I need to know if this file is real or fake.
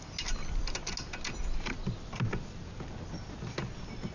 real